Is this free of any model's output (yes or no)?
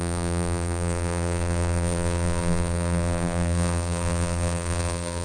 no